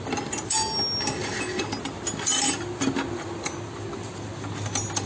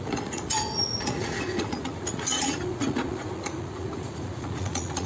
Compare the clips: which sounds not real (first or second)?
second